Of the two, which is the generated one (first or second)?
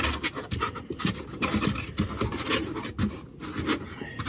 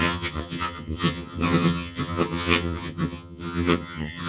second